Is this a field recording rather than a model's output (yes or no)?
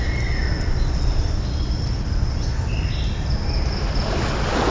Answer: yes